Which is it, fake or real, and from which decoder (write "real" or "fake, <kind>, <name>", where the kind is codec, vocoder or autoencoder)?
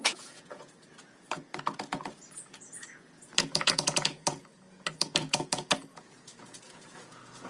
fake, vocoder, Vocos